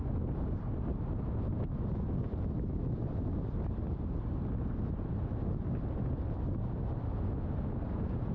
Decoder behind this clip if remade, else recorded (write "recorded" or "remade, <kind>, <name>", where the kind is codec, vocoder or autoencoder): recorded